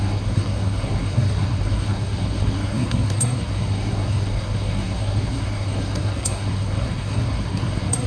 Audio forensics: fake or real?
fake